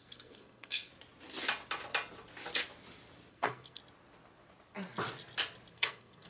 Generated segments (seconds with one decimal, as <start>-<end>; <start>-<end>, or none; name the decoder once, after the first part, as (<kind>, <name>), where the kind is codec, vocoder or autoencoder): 0.0-0.9 (codec, SNAC); 3.3-3.8; 5.7-6.3